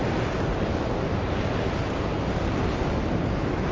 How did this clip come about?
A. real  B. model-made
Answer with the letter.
A